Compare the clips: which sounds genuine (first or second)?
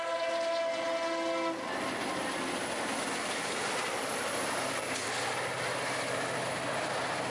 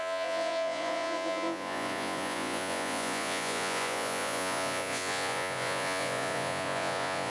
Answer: first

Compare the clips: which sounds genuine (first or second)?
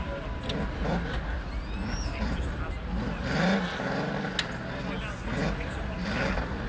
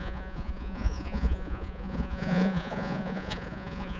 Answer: first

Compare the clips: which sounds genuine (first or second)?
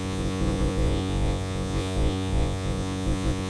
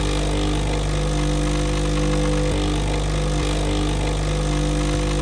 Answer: second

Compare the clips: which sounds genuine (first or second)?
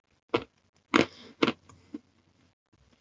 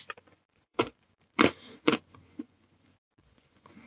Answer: first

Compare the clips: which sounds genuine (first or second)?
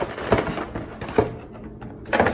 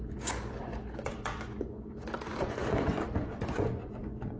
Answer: first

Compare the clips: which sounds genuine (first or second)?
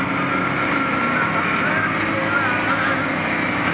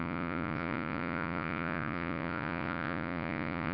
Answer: first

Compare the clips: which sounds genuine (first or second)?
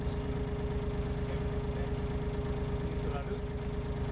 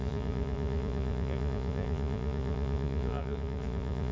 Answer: first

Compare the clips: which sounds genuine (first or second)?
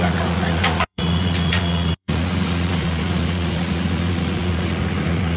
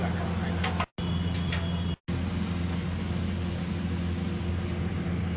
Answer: second